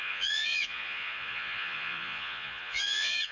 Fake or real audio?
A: fake